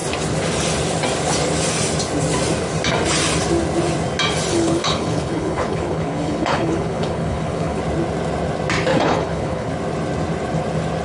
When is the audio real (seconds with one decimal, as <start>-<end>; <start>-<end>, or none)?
0.0-4.5; 7.8-8.9; 9.7-11.0